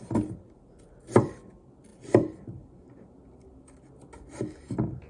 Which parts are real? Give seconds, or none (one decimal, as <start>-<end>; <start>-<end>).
0.0-1.9; 2.9-5.1